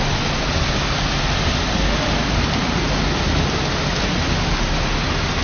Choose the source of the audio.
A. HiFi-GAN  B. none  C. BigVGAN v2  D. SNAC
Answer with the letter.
B